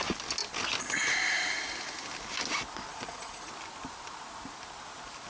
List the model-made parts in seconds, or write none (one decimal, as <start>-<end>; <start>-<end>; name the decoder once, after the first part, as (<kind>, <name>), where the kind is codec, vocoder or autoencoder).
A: 2.9-3.5 (vocoder, Vocos)